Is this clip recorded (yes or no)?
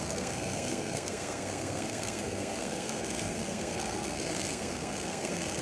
no